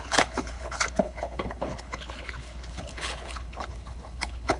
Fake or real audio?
fake